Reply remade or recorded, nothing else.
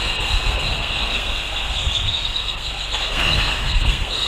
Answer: remade